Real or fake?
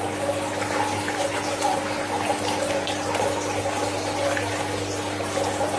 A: real